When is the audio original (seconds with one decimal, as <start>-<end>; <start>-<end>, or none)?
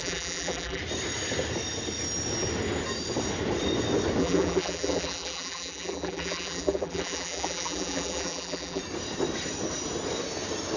0.8-4.2; 8.8-10.8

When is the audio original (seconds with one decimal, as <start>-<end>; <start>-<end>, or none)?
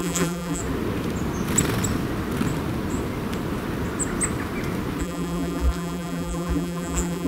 0.6-5.0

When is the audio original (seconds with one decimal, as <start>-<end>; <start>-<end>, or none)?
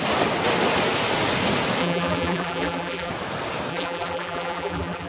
0.0-1.8; 3.1-3.7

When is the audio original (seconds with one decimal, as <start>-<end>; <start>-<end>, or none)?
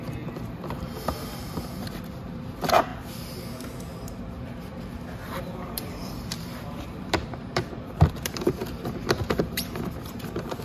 2.9-5.4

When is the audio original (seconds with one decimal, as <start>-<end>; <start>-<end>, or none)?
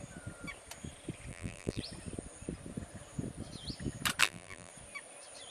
0.0-1.3; 1.8-4.2; 4.7-5.5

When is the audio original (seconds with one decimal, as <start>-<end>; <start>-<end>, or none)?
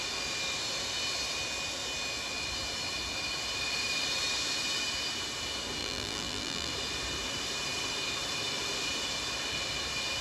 0.0-5.8; 6.7-10.2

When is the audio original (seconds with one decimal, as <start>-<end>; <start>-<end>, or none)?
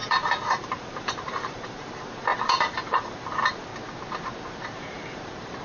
3.7-4.5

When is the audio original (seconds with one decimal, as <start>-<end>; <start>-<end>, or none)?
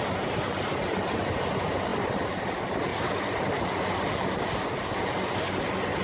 0.0-1.9; 2.5-2.9; 4.2-6.0